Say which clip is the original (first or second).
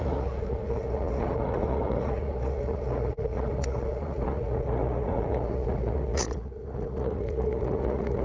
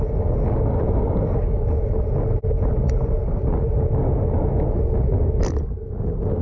second